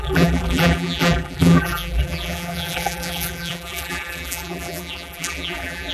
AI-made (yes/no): yes